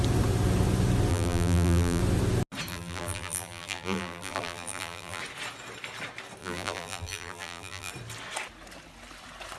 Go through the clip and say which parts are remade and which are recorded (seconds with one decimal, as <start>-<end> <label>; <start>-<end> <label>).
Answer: 0.0-1.1 recorded; 1.1-2.0 remade; 2.0-2.7 recorded; 2.7-5.2 remade; 5.2-6.4 recorded; 6.4-7.9 remade; 7.9-9.6 recorded